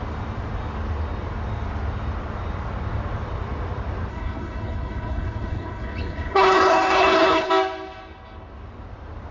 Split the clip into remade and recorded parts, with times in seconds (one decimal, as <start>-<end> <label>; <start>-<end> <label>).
0.0-4.1 recorded; 4.1-7.5 remade; 7.5-9.3 recorded